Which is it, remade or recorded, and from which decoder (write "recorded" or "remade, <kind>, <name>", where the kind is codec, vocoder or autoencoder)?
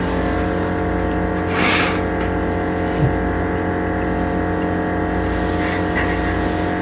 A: recorded